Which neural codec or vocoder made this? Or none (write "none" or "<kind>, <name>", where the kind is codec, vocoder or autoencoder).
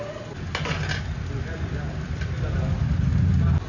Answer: none